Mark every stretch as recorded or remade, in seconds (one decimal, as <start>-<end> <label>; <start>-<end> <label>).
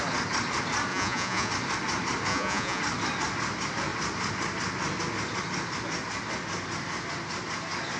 0.0-0.9 recorded; 0.9-1.5 remade; 1.5-2.3 recorded; 2.3-2.8 remade; 2.8-8.0 recorded